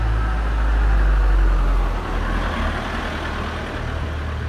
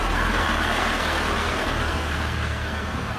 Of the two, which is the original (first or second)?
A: first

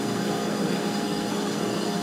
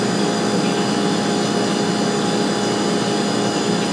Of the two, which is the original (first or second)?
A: second